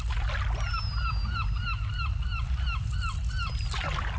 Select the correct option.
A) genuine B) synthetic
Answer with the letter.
A